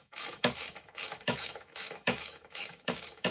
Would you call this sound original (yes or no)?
no